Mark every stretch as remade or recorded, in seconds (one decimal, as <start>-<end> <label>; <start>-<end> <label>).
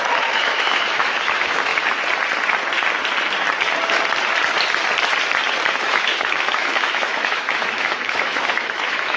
0.0-1.7 remade; 1.7-5.7 recorded; 5.7-9.2 remade